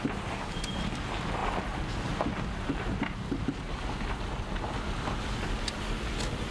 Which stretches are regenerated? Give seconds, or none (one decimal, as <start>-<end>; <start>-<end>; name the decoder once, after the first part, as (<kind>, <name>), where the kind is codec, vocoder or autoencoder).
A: none